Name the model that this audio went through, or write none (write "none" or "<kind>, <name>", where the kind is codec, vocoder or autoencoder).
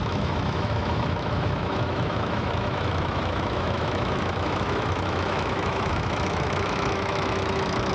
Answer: autoencoder, DAC-VAE